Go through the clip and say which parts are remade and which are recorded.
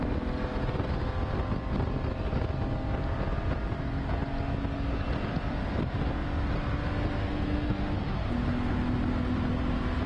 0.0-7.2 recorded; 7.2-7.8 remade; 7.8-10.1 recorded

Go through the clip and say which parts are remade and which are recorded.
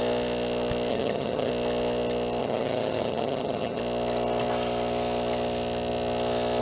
0.0-0.9 recorded; 0.9-1.5 remade; 1.5-2.4 recorded; 2.4-3.8 remade; 3.8-6.6 recorded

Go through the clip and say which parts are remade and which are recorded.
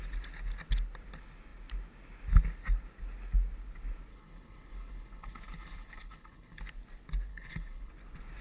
0.0-4.1 recorded; 4.1-6.6 remade; 6.6-7.3 recorded; 7.3-7.9 remade; 7.9-8.4 recorded